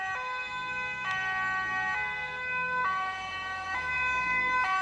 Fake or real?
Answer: real